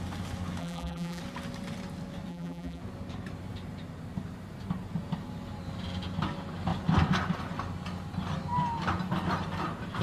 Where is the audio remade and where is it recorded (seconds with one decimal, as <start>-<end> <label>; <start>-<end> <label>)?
0.0-0.6 recorded; 0.6-1.2 remade; 1.2-2.3 recorded; 2.3-2.8 remade; 2.8-10.0 recorded